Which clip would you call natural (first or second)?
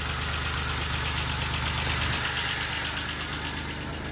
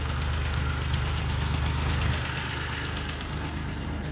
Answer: first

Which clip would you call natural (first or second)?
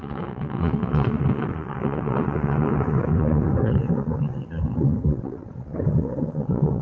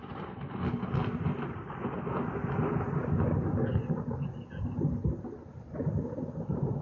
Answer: second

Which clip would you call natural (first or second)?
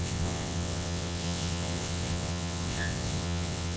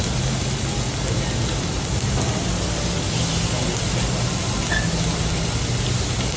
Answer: second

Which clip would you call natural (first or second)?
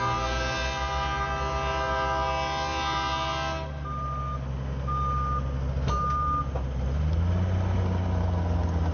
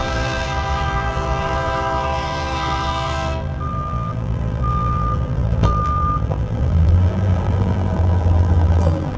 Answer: first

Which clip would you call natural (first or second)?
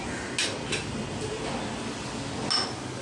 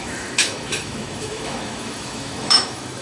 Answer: first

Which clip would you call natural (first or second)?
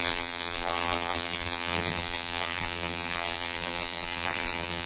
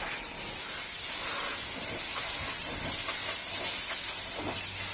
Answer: second